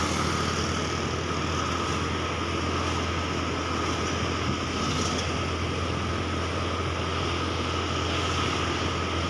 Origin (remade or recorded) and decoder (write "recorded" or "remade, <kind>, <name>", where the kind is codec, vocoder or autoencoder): recorded